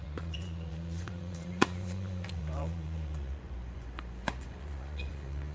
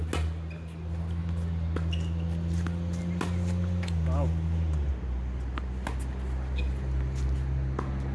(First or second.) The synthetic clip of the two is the first